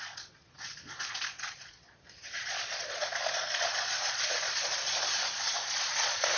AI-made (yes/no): yes